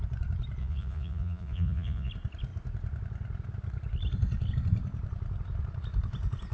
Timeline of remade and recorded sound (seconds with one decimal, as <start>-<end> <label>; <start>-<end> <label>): 0.0-0.6 recorded; 0.6-2.1 remade; 2.1-6.5 recorded